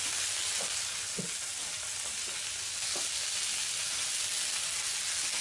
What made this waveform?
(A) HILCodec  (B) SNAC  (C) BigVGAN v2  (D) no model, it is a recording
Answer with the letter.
D